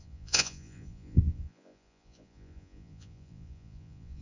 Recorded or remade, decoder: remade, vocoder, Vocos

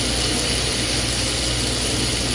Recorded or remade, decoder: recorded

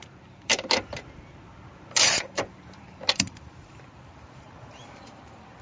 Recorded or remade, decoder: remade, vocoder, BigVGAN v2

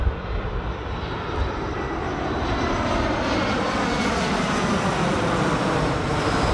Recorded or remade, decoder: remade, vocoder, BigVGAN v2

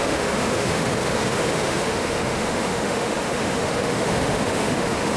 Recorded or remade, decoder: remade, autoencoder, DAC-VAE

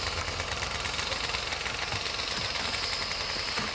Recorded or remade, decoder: recorded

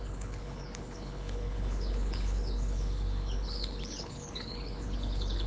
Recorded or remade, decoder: remade, codec, HILCodec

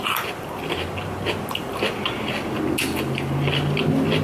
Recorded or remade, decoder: recorded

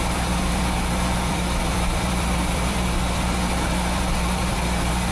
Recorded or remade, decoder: remade, vocoder, BigVGAN v2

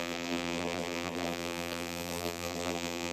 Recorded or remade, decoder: remade, vocoder, BigVGAN v2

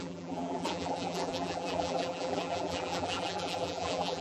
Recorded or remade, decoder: remade, vocoder, BigVGAN v2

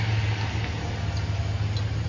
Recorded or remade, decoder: recorded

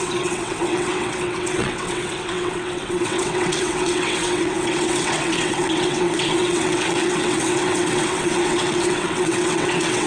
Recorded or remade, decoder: remade, vocoder, WaveNeXt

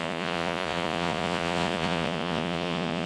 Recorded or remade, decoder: remade, vocoder, Vocos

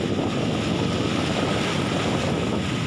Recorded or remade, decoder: recorded